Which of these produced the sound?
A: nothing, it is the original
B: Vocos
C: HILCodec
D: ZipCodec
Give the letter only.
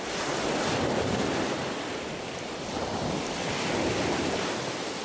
A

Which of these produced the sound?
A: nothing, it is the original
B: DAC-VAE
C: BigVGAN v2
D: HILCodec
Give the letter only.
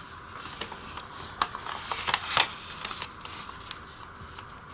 A